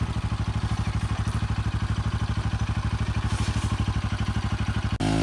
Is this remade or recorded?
recorded